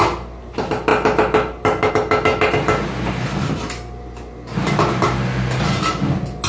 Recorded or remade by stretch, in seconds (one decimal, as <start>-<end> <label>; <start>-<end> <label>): 0.0-6.5 recorded